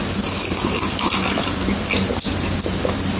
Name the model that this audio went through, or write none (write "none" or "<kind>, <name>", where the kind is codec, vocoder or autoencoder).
none